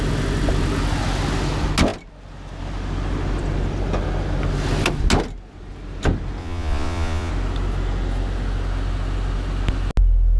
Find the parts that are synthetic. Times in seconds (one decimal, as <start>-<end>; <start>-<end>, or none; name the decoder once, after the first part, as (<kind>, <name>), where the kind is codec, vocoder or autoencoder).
6.4-7.3 (vocoder, Vocos)